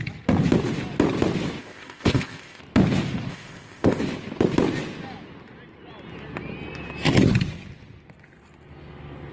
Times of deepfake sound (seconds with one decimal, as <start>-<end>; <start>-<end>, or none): 1.6-2.6; 3.3-4.0